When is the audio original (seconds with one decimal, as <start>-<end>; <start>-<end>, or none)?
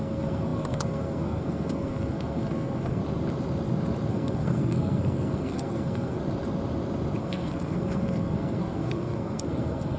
3.0-4.1; 6.2-7.2